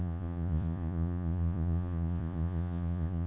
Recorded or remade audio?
remade